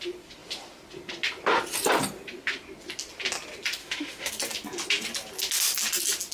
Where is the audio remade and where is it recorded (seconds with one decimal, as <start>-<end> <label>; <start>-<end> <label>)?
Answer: 0.0-3.8 recorded; 3.8-4.3 remade; 4.3-6.3 recorded